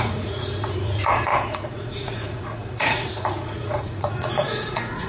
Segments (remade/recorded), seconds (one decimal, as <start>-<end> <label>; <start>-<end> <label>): 0.0-5.1 remade